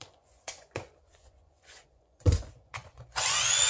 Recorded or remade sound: remade